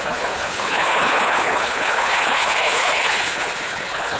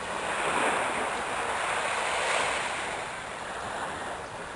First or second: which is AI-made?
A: first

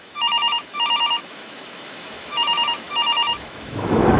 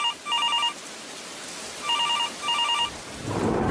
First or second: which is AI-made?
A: first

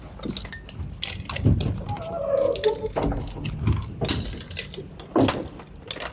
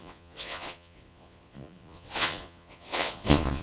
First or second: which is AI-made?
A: second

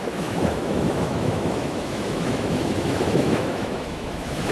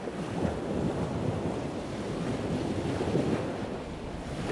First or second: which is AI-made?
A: first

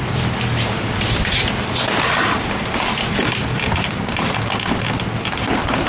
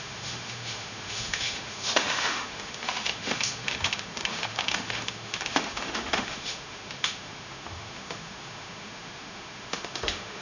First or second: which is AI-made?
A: second